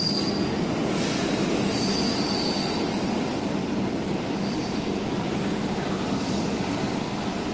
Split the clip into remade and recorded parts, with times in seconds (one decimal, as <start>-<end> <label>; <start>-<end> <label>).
0.0-7.5 recorded